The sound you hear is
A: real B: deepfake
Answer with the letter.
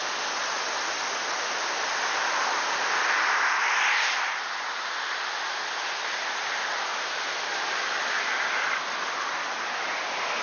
A